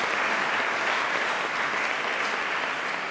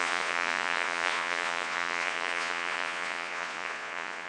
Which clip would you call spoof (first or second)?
second